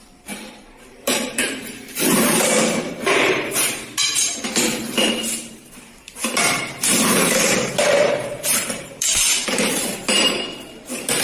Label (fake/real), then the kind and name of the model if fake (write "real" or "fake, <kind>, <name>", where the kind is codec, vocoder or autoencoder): fake, vocoder, BigVGAN v2